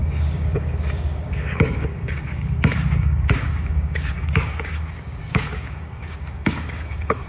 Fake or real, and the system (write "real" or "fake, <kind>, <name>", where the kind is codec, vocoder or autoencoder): fake, codec, DAC